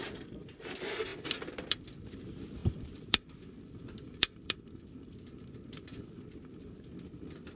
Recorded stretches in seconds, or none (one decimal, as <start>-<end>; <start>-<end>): 0.6-1.1; 2.2-2.6; 7.1-7.6